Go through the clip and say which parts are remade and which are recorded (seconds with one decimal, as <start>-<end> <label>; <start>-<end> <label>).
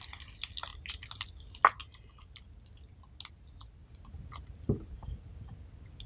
0.0-0.7 recorded; 0.7-1.3 remade; 1.3-1.8 recorded; 1.8-2.4 remade; 2.4-3.8 recorded; 3.8-5.6 remade; 5.6-6.1 recorded